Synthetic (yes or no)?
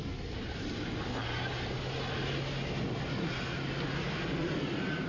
no